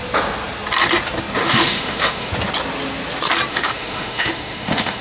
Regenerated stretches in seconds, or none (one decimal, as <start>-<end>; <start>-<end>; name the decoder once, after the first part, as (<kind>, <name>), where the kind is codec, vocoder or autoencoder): 1.4-2.3 (autoencoder, DAC-VAE); 3.5-5.0